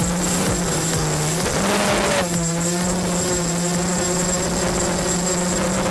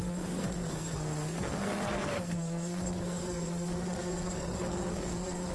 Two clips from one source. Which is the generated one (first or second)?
second